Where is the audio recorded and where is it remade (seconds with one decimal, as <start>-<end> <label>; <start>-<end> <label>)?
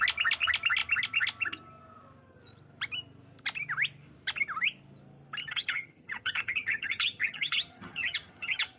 0.0-5.4 recorded; 5.4-8.8 remade